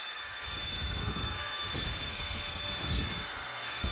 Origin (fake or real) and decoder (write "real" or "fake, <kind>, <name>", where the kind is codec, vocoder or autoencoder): fake, codec, SNAC